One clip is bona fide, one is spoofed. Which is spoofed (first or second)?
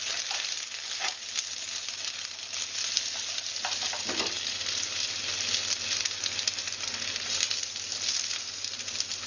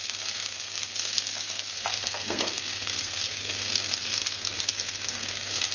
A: second